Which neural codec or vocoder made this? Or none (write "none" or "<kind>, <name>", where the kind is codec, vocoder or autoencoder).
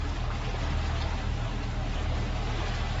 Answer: none